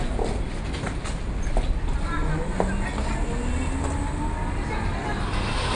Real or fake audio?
real